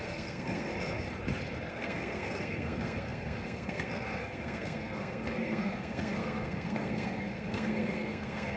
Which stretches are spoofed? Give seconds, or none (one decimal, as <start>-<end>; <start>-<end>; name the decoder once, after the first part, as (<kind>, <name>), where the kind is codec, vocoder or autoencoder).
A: 0.0-0.7 (codec, SNAC); 1.7-8.6